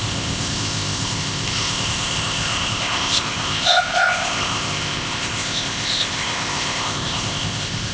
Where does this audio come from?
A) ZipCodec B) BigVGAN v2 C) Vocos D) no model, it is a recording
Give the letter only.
A